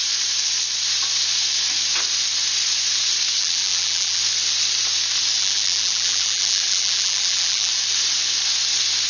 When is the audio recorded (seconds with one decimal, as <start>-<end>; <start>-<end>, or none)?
0.0-3.4; 4.2-5.4; 7.7-9.1